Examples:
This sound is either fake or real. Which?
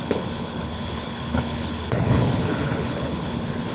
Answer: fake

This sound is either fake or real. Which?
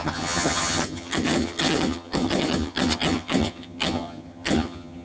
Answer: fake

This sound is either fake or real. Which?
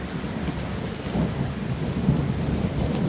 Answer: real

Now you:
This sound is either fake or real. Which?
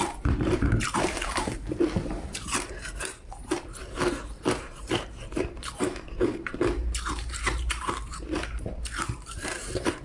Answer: fake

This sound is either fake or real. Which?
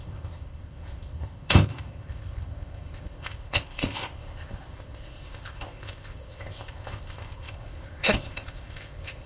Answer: fake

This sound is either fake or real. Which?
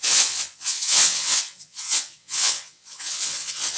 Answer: fake